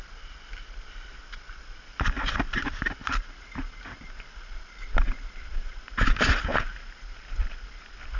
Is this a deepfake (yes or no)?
no